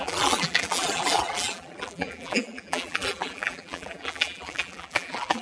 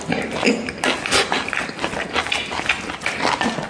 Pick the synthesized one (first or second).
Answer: first